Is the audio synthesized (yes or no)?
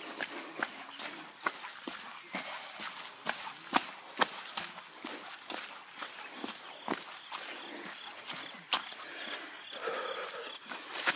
no